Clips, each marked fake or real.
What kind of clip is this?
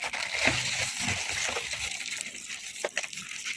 real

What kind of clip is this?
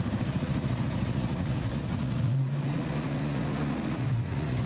fake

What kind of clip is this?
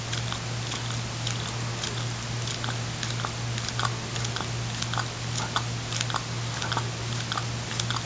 real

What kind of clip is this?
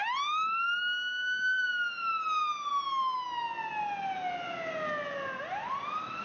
real